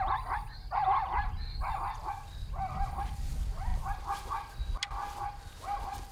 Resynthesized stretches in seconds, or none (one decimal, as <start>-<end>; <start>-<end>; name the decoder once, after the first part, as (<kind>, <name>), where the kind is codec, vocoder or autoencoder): none